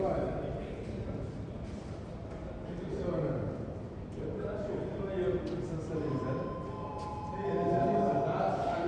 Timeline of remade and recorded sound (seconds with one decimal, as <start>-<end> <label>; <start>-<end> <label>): 0.0-8.9 recorded